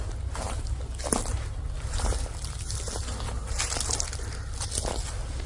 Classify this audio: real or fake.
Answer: real